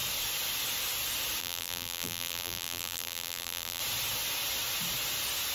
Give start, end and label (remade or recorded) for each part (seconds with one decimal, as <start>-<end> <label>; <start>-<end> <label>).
0.0-1.4 recorded; 1.4-3.8 remade; 3.8-5.5 recorded